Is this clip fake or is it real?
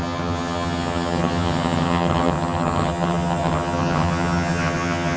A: fake